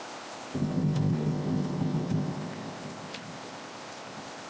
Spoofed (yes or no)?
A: yes